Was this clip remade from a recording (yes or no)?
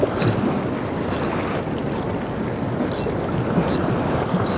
no